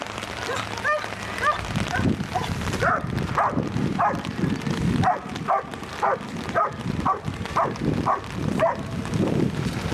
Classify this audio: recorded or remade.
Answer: recorded